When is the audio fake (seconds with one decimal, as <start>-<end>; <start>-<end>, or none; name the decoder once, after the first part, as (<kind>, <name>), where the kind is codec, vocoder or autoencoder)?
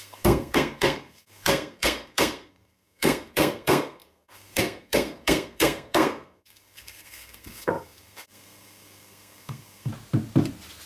0.0-9.9 (codec, SNAC)